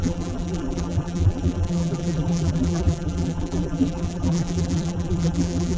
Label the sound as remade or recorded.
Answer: remade